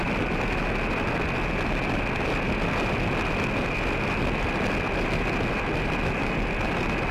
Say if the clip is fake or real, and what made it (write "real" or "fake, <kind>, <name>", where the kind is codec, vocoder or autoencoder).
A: real